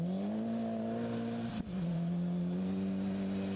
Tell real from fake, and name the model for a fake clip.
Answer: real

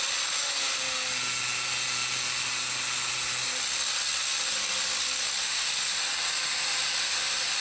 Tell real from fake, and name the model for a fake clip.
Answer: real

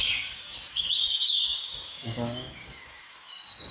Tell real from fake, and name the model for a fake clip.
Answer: fake, codec, DAC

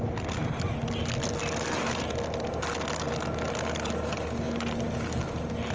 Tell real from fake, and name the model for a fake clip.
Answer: real